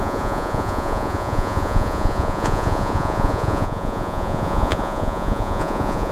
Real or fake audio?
fake